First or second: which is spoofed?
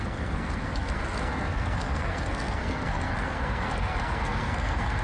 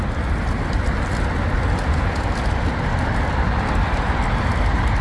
first